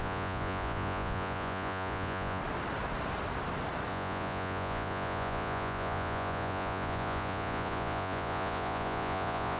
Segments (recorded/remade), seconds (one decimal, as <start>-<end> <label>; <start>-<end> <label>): 0.0-2.4 remade; 2.4-3.9 recorded; 3.9-9.6 remade